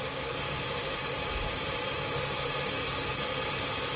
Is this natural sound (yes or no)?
no